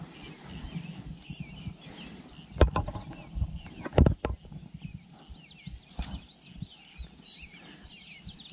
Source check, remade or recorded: recorded